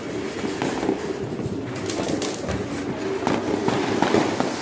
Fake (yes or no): no